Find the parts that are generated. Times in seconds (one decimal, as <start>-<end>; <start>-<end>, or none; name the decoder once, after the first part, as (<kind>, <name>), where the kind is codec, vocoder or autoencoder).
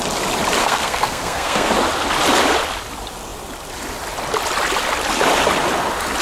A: 0.6-1.7 (codec, SNAC)